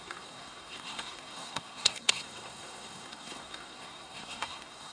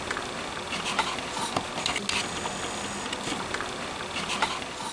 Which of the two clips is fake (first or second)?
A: first